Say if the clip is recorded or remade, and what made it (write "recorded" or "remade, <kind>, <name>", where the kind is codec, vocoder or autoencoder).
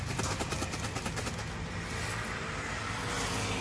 recorded